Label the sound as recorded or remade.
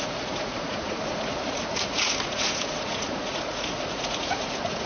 remade